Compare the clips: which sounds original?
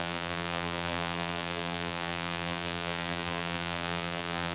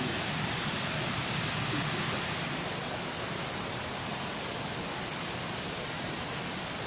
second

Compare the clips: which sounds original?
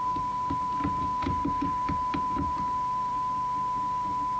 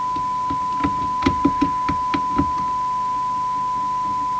second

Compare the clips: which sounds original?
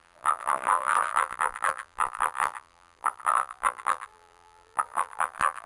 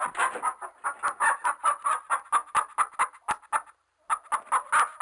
second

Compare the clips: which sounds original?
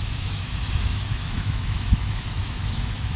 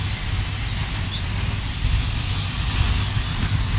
second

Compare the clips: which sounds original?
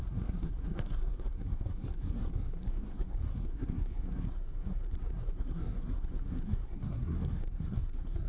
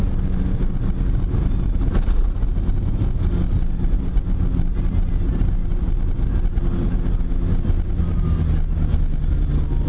second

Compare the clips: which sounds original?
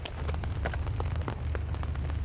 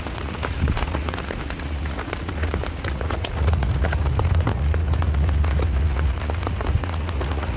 first